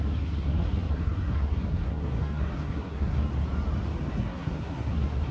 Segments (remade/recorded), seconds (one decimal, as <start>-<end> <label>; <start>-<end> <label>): 0.0-3.3 remade; 3.3-4.1 recorded; 4.1-5.3 remade